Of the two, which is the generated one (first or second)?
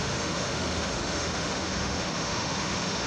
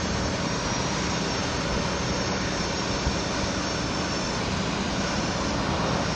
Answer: first